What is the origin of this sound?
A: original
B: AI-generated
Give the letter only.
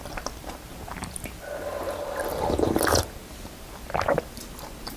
A